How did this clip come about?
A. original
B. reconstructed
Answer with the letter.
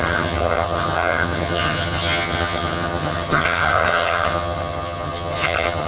B